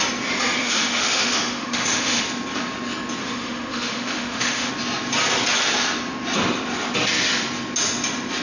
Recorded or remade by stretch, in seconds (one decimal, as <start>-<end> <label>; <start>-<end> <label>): 0.0-0.6 recorded; 0.6-2.2 remade; 2.2-3.2 recorded; 3.2-4.7 remade; 4.7-8.4 recorded